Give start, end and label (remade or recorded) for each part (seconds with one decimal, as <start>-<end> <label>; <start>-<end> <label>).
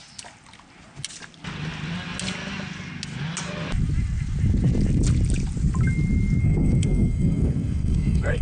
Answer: 0.0-6.4 recorded; 6.4-8.4 remade